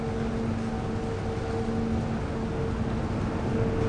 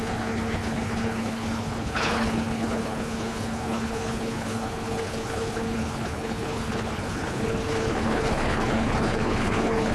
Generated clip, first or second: second